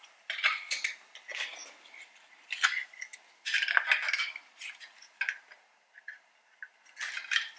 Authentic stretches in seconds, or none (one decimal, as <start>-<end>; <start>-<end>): 0.0-7.6